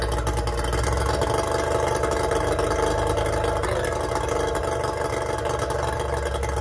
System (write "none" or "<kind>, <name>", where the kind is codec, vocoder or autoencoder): none